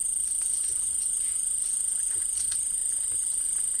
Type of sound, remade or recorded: recorded